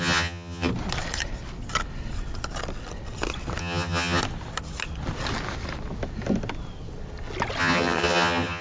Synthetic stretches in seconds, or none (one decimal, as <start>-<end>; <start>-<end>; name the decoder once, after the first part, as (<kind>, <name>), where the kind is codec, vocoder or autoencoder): 0.0-0.7 (vocoder, HiFi-GAN); 3.6-4.2; 7.6-8.6